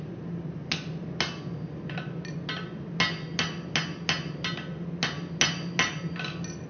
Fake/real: real